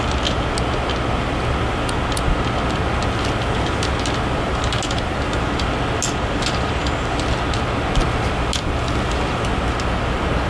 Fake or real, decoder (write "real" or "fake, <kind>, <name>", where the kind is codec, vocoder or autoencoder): real